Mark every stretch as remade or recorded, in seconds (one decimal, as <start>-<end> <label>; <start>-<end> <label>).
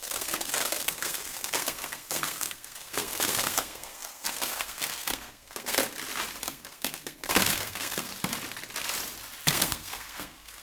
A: 0.0-5.8 remade; 5.8-6.4 recorded; 6.4-8.1 remade; 8.1-9.5 recorded; 9.5-10.6 remade